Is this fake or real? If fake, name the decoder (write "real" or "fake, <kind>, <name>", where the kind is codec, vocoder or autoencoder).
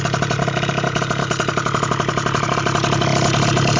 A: real